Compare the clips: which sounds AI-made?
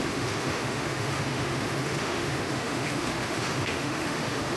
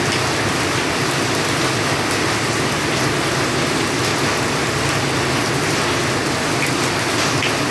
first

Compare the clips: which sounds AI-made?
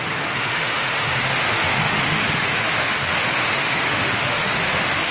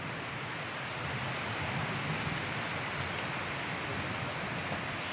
first